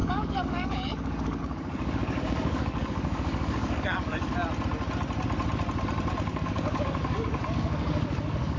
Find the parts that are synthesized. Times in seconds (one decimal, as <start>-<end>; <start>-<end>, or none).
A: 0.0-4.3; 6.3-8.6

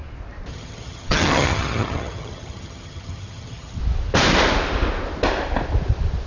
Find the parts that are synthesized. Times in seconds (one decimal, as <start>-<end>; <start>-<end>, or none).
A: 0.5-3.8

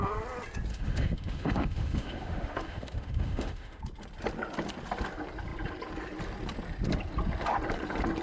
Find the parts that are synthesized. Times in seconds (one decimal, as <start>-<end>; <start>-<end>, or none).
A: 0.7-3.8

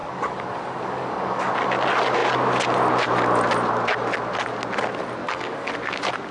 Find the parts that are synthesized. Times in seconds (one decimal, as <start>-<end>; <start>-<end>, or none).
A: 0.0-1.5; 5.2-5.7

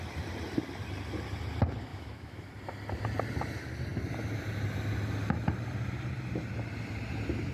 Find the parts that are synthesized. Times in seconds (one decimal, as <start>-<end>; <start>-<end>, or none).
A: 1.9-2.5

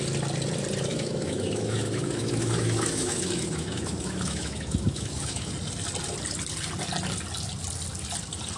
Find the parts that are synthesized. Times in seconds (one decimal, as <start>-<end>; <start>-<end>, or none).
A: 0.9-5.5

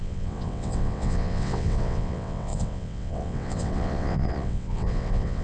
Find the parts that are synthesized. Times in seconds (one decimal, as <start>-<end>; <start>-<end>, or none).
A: 0.0-5.4

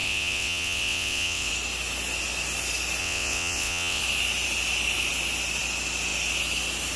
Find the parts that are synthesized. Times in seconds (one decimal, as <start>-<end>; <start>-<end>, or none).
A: 0.0-1.5; 3.0-4.0